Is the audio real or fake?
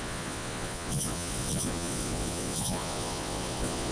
fake